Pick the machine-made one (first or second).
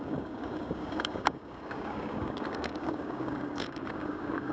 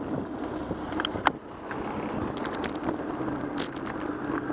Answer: first